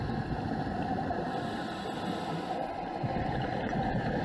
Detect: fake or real fake